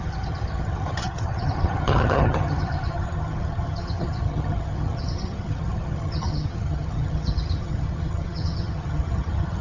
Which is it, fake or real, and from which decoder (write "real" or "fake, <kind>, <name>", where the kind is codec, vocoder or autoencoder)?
fake, vocoder, HiFi-GAN